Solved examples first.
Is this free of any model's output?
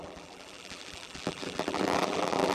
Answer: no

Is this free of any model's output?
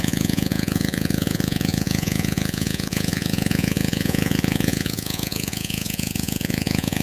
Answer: no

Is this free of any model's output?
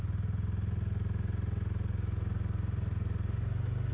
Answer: yes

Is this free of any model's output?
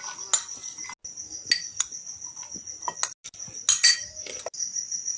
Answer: yes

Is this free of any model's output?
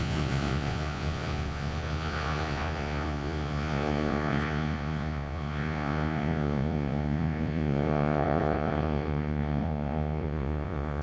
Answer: no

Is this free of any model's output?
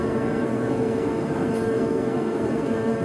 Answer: no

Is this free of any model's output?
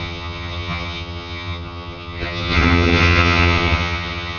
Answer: no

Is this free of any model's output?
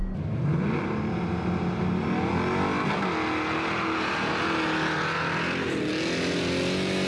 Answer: yes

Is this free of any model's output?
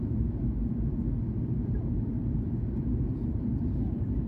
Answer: no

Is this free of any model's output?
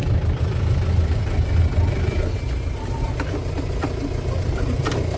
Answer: yes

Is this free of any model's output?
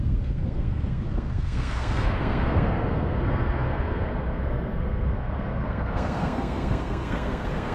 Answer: no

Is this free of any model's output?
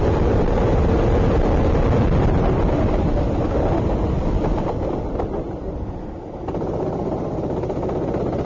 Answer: yes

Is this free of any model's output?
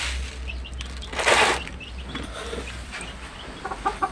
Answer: yes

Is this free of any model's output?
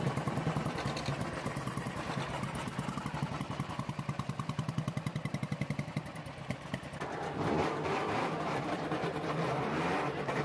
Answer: no